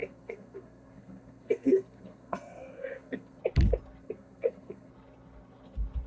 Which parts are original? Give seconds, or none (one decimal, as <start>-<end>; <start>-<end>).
3.4-4.0; 4.9-6.1